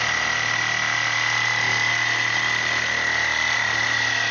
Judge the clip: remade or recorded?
recorded